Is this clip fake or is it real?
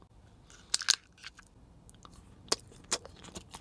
real